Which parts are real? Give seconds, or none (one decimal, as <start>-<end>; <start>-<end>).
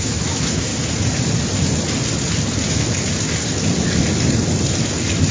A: 0.7-2.6; 3.0-5.3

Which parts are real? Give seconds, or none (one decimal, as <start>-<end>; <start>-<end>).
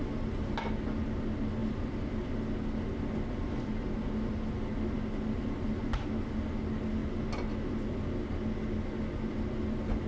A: 0.0-10.1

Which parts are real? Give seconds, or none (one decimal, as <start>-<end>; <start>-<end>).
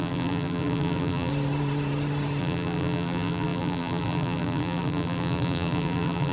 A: 1.3-2.4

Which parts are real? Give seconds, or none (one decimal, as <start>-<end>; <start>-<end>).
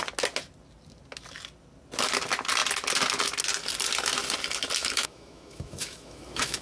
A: 0.0-4.8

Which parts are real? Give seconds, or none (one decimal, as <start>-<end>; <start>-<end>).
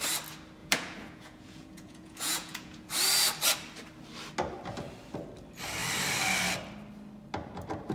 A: 0.0-0.6; 2.9-7.9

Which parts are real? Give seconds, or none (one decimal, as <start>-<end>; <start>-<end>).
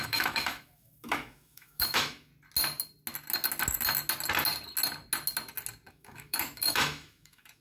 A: 2.3-5.9